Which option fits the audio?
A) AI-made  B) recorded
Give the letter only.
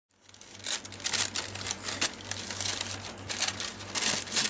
B